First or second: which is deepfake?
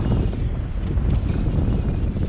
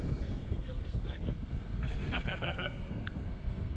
second